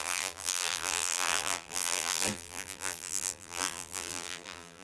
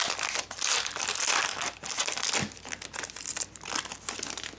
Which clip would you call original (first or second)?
second